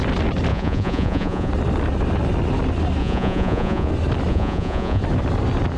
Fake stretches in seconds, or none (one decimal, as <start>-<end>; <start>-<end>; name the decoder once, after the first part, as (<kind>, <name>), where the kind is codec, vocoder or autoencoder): 0.5-1.5 (vocoder, Vocos); 3.0-3.9; 4.3-5.0

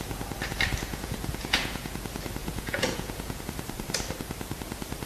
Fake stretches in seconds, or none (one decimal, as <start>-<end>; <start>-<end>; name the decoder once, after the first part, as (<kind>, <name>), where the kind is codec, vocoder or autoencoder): 0.9-1.9 (vocoder, Vocos); 2.4-3.4

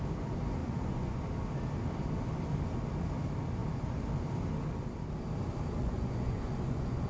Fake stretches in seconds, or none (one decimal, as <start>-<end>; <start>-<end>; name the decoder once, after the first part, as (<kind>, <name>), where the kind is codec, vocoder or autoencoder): 0.6-1.2 (vocoder, Vocos); 5.8-7.1